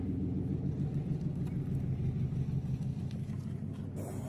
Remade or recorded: recorded